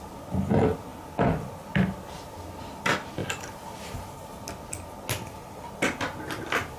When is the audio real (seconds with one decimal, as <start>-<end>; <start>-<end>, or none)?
0.0-3.2; 4.4-6.8